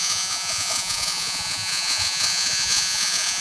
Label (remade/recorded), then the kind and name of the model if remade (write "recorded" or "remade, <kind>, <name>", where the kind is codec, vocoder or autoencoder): remade, vocoder, Vocos